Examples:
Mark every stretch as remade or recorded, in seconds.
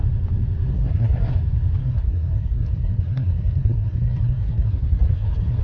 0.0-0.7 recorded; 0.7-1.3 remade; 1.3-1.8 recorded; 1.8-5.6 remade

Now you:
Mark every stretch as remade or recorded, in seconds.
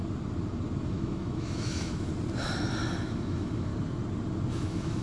0.0-0.9 recorded; 0.9-2.1 remade; 2.1-3.0 recorded; 3.0-3.7 remade; 3.7-4.5 recorded; 4.5-5.0 remade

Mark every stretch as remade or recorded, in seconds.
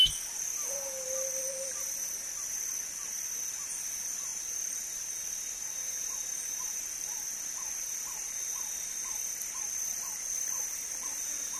0.0-11.6 recorded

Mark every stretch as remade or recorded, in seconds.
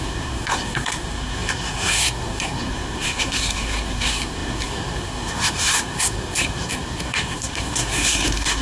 0.0-8.6 remade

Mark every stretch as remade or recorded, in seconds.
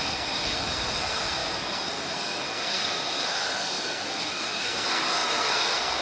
0.0-6.0 remade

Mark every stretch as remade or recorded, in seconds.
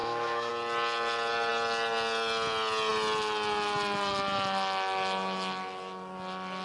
0.0-0.5 remade; 0.5-6.6 recorded